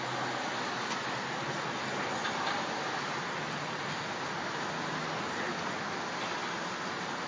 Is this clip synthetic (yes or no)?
no